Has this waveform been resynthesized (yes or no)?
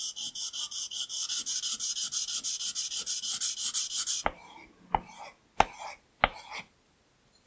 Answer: no